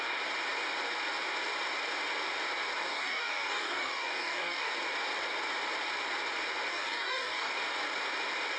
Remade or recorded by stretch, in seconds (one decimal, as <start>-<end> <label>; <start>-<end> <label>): 0.0-2.8 recorded; 2.8-4.7 remade; 4.7-6.7 recorded; 6.7-7.5 remade; 7.5-8.6 recorded